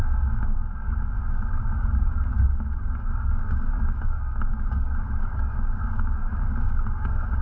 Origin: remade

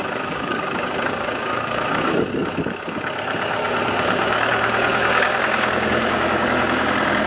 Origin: remade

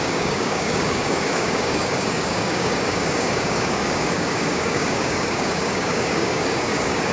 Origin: remade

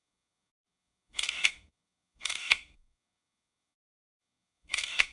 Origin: remade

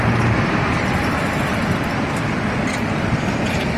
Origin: recorded